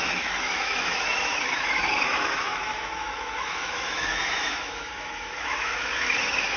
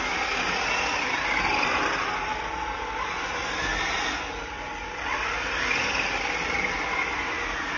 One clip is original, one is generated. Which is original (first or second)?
second